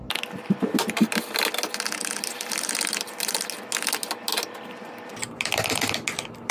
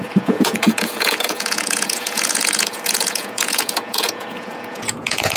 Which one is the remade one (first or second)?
second